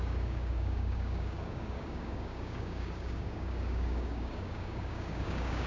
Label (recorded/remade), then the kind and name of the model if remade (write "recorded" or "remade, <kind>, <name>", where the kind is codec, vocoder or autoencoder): remade, codec, DAC